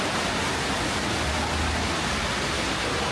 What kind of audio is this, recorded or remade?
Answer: recorded